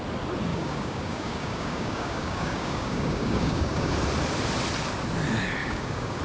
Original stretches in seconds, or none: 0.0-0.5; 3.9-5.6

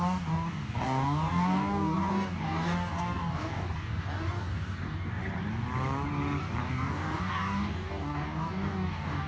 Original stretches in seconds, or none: 5.2-6.6

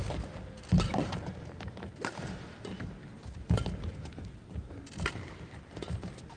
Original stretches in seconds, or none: 0.0-6.4

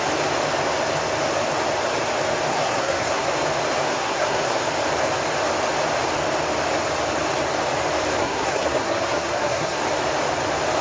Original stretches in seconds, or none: 0.0-2.5; 3.3-3.9; 4.7-8.2; 9.8-10.8

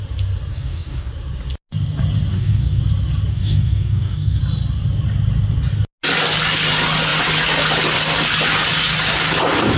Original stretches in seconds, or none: 0.0-0.5; 1.1-2.3; 2.8-3.3; 4.4-9.8